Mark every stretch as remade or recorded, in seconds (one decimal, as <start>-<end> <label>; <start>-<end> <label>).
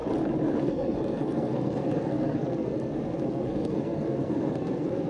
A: 0.0-0.6 recorded; 0.6-5.1 remade